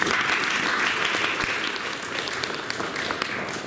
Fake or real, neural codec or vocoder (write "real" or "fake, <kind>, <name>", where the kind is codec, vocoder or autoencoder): real